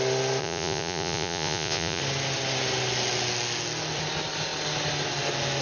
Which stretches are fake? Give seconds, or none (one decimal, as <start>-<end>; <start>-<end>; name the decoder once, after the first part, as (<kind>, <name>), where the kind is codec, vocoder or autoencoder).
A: 0.4-2.0 (vocoder, Vocos)